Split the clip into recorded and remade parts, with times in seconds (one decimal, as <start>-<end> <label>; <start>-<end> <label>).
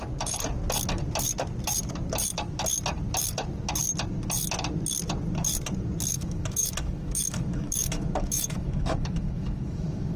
0.0-6.1 recorded; 6.1-10.2 remade